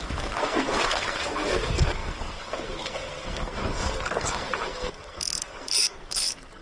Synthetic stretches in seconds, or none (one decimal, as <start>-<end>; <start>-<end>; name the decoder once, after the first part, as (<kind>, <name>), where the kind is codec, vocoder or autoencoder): 0.0-6.6 (codec, SNAC)